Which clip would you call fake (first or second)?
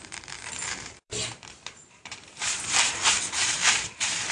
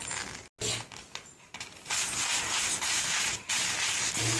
first